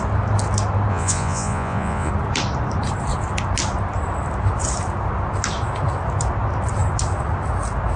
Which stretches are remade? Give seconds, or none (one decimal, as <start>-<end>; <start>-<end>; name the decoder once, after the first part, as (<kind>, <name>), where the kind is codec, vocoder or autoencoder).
0.9-2.1 (vocoder, Vocos)